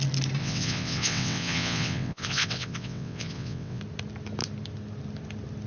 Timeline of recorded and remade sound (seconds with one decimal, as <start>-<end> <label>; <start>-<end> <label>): 0.0-0.4 recorded; 0.4-3.8 remade; 3.8-5.7 recorded